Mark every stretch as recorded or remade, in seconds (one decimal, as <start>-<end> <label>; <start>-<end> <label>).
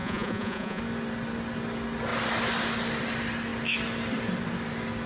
0.0-0.8 remade; 0.8-5.1 recorded